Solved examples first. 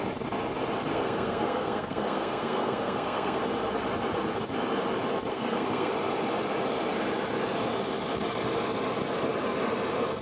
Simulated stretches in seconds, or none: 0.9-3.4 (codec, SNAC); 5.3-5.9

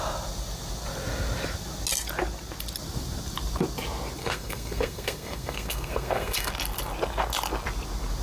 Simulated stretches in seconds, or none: 4.2-6.5 (codec, SNAC)

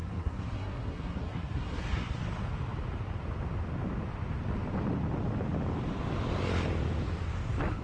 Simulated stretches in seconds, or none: 0.0-2.2 (codec, SNAC)

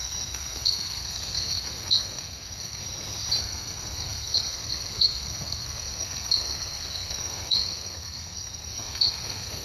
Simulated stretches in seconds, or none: 0.0-2.8 (codec, SNAC); 3.4-9.6

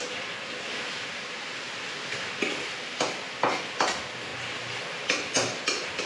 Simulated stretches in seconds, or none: none

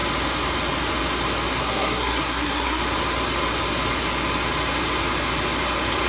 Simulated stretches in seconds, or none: 1.6-2.8 (codec, SNAC)